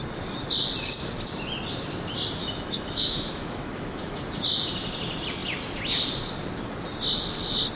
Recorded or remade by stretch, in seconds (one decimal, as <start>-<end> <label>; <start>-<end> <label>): 0.0-2.4 recorded; 2.4-4.2 remade; 4.2-7.8 recorded